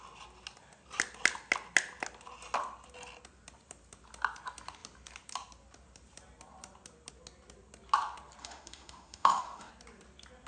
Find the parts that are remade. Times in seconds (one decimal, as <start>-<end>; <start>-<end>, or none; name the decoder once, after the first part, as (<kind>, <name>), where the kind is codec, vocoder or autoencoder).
8.4-9.7 (autoencoder, DAC-VAE)